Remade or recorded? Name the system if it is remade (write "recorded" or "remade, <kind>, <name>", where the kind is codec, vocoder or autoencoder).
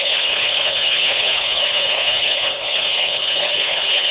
remade, codec, HILCodec